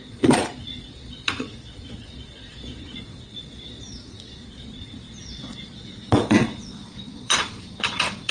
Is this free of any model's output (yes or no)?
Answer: no